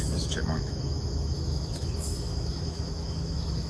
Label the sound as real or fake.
fake